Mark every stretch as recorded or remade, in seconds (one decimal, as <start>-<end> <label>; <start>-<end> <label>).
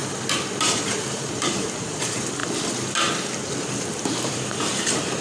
0.0-0.8 recorded; 0.8-2.4 remade; 2.4-3.9 recorded; 3.9-5.2 remade